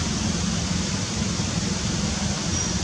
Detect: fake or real real